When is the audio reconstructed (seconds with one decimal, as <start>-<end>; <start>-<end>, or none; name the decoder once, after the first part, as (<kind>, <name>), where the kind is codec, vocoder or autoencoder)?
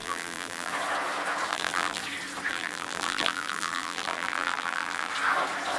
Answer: 0.0-0.7 (vocoder, BigVGAN v2); 1.5-2.0; 2.5-5.1